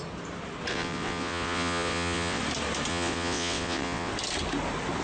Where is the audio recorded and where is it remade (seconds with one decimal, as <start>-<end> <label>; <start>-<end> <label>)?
0.0-0.7 recorded; 0.7-2.4 remade; 2.4-2.9 recorded; 2.9-4.1 remade; 4.1-5.0 recorded